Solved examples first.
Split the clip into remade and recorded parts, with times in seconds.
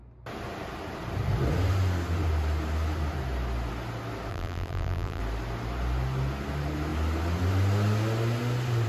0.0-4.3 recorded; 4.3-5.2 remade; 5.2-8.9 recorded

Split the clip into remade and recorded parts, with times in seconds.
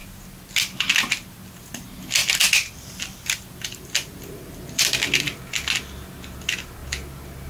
0.0-2.2 recorded; 2.2-5.4 remade; 5.4-7.5 recorded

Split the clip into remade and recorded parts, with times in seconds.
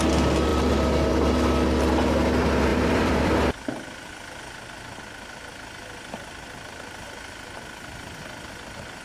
0.0-2.7 recorded; 2.7-4.4 remade; 4.4-9.0 recorded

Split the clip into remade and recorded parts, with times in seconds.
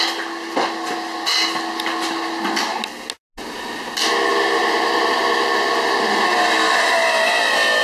0.0-4.3 recorded; 4.3-6.2 remade; 6.2-7.8 recorded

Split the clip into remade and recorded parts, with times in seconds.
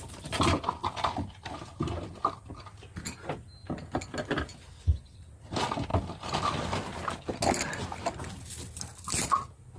0.0-9.8 recorded